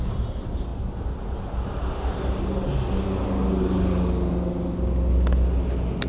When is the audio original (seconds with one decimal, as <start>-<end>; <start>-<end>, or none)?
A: 0.0-6.1